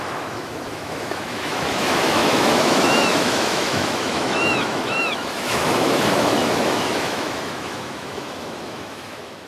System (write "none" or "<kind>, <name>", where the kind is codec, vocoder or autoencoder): autoencoder, DAC-VAE